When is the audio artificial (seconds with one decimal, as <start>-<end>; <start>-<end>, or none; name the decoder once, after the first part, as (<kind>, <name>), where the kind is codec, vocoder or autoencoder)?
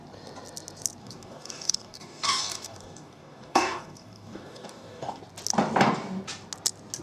1.0-5.2 (codec, DAC)